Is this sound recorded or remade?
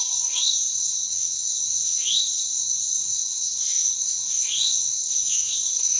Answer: remade